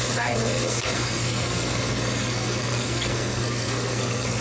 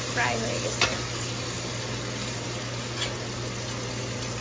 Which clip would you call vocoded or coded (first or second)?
first